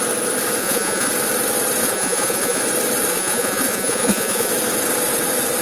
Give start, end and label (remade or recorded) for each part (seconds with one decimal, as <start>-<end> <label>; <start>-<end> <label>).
0.0-0.6 recorded; 0.6-1.1 remade; 1.1-1.8 recorded; 1.8-2.6 remade; 2.6-3.1 recorded; 3.1-4.5 remade; 4.5-5.6 recorded